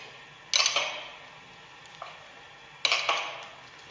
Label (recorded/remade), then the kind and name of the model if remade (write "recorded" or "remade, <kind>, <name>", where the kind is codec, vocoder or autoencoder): recorded